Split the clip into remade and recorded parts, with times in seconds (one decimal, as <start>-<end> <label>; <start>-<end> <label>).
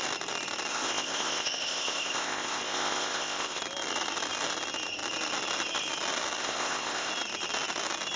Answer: 0.0-0.7 recorded; 0.7-3.6 remade; 3.6-6.4 recorded; 6.4-7.1 remade; 7.1-8.2 recorded